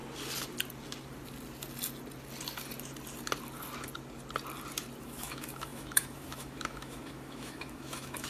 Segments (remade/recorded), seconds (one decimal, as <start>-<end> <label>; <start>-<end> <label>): 0.0-5.0 recorded; 5.0-8.3 remade